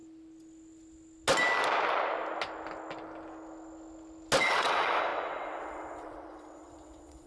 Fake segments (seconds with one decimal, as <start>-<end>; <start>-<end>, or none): 4.4-7.3